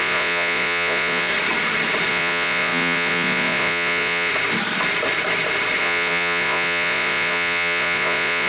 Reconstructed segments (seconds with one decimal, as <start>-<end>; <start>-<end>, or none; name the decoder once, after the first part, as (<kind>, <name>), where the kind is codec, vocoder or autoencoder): 0.0-1.3 (vocoder, Vocos); 2.1-4.3; 5.8-8.5